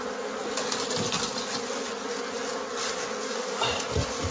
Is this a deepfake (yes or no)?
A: no